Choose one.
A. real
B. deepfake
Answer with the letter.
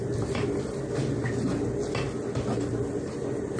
A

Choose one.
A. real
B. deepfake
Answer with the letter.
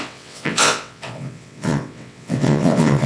B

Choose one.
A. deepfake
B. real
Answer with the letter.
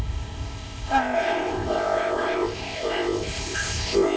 A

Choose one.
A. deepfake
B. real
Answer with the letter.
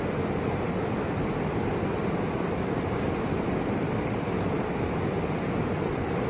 B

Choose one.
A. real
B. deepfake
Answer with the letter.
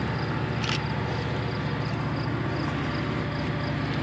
A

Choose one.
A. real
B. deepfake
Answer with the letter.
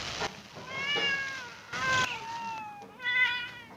A